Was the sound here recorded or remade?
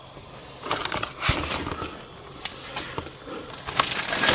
recorded